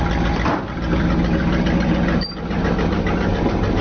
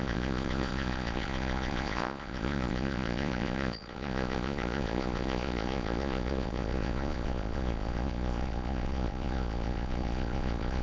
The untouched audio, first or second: first